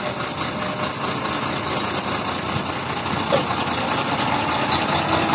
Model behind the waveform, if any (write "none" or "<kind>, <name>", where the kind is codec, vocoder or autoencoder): none